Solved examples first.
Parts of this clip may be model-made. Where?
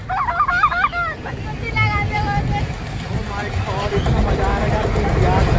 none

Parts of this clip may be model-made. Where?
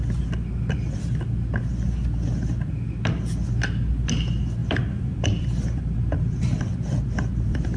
4.6-7.8 (vocoder, BigVGAN v2)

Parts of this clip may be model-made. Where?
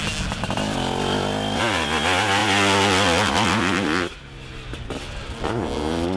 none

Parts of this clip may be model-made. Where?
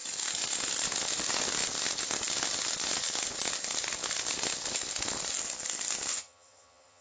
6.1-7.0 (vocoder, HiFi-GAN)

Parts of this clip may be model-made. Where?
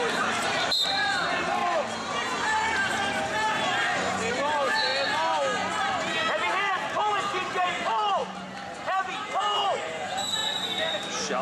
0.0-1.6 (vocoder, BigVGAN v2); 4.3-4.9; 6.6-8.2; 8.8-10.4; 10.9-11.4